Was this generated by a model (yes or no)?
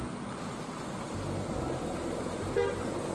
no